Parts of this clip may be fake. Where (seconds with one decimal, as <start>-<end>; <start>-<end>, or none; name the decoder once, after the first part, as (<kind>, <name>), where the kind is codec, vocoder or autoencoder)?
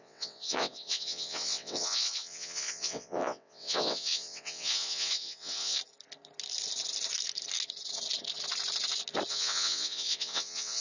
0.0-5.8 (vocoder, WaveNeXt); 9.3-10.8